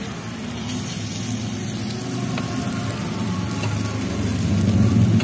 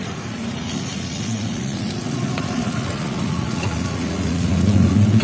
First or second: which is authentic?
first